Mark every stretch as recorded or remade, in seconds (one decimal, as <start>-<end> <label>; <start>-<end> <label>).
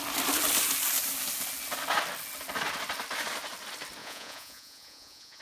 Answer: 0.0-4.0 recorded; 4.0-5.4 remade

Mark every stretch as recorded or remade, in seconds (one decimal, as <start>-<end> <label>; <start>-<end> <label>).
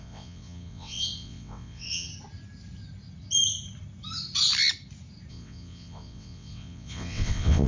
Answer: 0.0-2.1 remade; 2.1-5.3 recorded; 5.3-7.7 remade